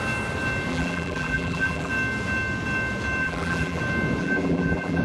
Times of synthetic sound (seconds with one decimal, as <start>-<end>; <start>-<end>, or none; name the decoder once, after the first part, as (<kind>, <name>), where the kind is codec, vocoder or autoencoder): 0.7-1.9 (vocoder, BigVGAN v2); 3.2-3.8; 4.2-5.0